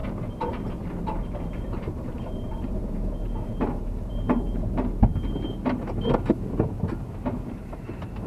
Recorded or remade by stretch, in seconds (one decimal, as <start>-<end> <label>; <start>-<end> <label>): 0.0-0.5 recorded; 0.5-5.1 remade; 5.1-7.5 recorded; 7.5-8.3 remade

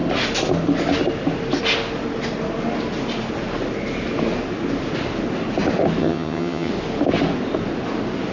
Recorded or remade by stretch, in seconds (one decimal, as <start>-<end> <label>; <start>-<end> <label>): 0.0-6.0 recorded; 6.0-6.7 remade; 6.7-8.3 recorded